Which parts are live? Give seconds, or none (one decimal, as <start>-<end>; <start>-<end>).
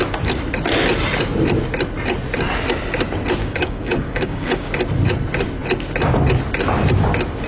0.0-3.4; 4.7-7.5